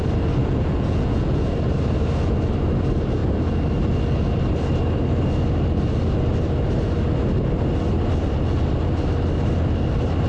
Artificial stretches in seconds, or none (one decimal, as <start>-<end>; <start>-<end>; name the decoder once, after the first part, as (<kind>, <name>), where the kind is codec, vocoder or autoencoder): 0.4-1.5 (vocoder, Vocos)

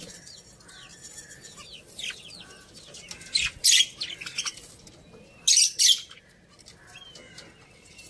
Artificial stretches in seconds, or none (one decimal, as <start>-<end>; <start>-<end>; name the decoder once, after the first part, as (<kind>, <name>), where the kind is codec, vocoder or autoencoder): none

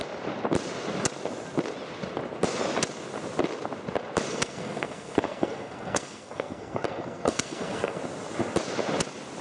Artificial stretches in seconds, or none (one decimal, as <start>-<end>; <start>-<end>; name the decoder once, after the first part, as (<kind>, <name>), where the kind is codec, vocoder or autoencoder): 4.3-8.0 (codec, SNAC)

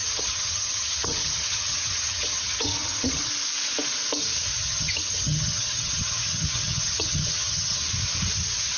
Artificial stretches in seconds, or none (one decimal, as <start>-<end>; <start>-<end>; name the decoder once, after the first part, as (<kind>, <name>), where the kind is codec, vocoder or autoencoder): 0.0-3.3 (vocoder, HiFi-GAN); 4.5-7.8

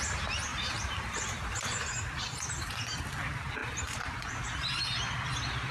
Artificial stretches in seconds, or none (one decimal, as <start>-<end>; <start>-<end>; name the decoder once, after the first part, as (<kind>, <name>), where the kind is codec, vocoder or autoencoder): 0.5-2.7 (vocoder, BigVGAN v2); 3.6-4.3